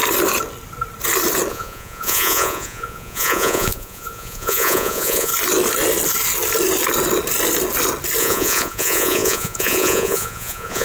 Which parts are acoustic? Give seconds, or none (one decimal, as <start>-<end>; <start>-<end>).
0.0-1.5; 5.3-8.2

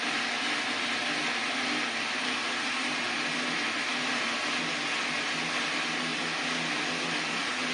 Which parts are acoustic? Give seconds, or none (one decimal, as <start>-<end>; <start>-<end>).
0.0-7.7

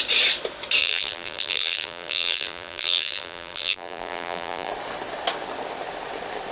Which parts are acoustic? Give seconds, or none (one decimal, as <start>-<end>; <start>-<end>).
0.0-0.8; 4.7-6.5

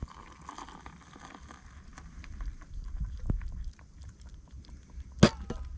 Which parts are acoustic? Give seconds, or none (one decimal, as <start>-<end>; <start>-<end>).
0.0-1.9; 4.7-5.8

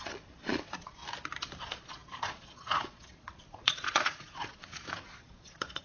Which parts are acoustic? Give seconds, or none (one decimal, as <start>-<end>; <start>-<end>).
1.0-1.6

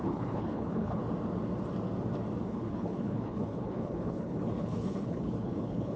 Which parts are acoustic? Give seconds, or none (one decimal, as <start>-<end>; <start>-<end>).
1.0-2.4